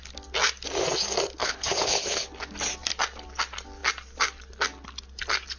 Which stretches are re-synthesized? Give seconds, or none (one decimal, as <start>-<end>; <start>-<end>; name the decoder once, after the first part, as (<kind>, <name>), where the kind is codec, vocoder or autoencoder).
1.4-2.3 (codec, HILCodec)

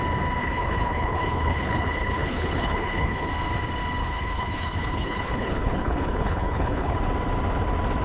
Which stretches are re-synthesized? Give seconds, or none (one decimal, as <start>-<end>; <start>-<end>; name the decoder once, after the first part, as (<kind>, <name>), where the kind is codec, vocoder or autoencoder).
0.4-3.3 (codec, HILCodec); 4.0-7.0

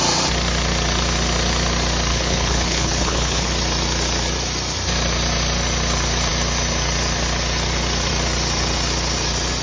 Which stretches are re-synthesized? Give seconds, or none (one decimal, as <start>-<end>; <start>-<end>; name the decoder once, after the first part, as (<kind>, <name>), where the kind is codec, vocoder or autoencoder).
2.1-3.5 (codec, HILCodec)

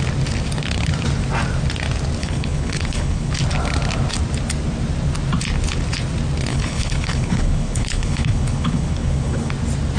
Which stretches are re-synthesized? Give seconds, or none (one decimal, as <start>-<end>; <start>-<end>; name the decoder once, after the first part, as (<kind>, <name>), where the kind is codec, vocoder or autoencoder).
2.2-3.3 (codec, HILCodec); 6.5-9.5

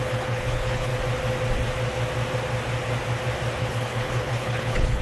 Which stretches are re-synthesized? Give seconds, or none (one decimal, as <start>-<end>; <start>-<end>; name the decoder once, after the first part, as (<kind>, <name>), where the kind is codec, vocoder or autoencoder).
0.0-0.9 (codec, HILCodec); 3.6-5.0

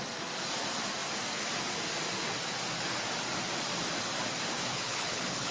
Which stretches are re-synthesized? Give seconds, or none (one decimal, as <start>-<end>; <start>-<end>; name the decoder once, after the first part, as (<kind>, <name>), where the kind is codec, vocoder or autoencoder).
4.7-5.5 (codec, HILCodec)